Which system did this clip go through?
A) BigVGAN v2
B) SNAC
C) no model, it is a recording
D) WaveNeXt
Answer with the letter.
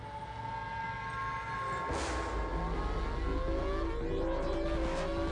C